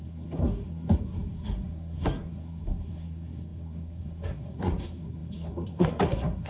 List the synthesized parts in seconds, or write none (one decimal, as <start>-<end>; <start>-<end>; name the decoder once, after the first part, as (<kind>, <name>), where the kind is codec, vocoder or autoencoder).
0.0-6.5 (codec, SNAC)